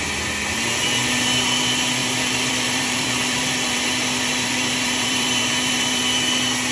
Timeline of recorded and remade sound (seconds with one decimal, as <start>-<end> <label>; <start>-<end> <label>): 0.0-2.0 recorded; 2.0-6.0 remade; 6.0-6.7 recorded